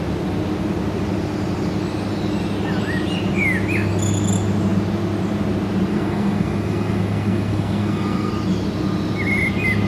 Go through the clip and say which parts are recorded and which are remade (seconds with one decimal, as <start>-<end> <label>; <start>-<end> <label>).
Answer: 0.0-5.9 recorded; 5.9-8.3 remade; 8.3-9.9 recorded